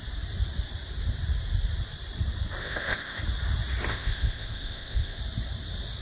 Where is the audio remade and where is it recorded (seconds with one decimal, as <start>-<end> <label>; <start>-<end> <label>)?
0.0-2.6 recorded; 2.6-3.2 remade; 3.2-3.9 recorded; 3.9-5.2 remade; 5.2-6.0 recorded